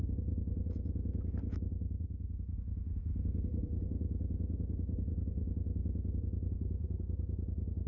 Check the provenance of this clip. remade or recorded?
remade